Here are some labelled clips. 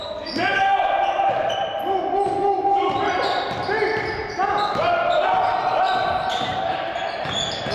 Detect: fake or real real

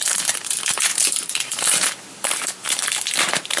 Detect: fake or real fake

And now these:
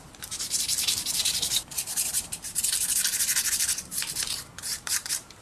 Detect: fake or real fake